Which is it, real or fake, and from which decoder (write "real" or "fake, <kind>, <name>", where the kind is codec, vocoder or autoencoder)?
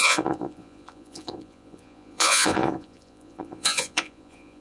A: fake, vocoder, Vocos